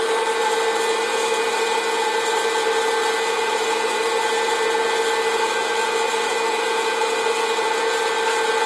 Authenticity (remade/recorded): recorded